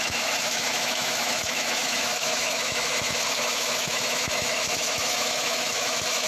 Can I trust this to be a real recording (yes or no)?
no